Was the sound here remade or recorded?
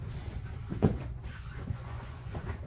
remade